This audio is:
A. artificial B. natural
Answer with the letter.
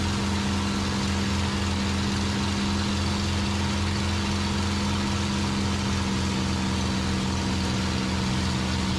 B